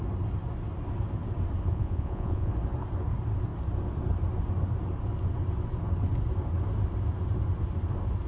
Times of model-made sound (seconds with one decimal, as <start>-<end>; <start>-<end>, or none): 1.7-2.5

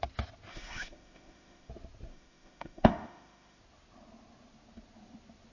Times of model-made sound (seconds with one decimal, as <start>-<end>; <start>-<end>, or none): 0.5-1.7; 2.1-3.6

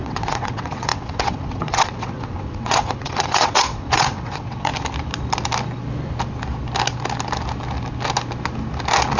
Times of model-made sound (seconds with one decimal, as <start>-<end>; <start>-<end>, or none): 0.0-4.7

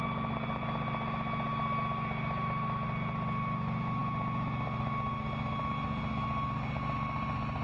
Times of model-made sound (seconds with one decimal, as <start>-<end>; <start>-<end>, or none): none

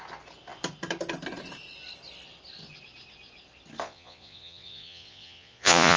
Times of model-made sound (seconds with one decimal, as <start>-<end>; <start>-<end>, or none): 3.8-6.0

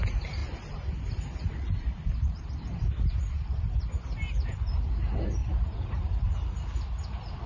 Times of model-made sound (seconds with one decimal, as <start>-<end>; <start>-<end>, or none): 0.4-3.8; 5.4-6.1